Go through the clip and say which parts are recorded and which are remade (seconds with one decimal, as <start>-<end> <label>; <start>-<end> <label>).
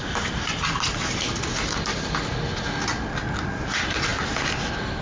0.0-5.0 recorded